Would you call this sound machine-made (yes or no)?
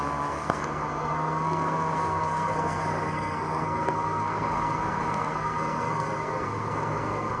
yes